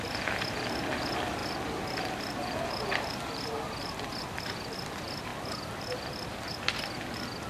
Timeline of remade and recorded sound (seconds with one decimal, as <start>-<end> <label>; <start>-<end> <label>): 0.0-7.5 recorded